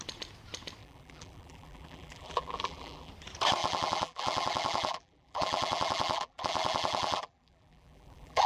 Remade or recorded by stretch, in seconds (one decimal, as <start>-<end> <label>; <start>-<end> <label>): 0.0-0.8 recorded; 0.8-3.1 remade; 3.1-3.6 recorded; 3.6-8.5 remade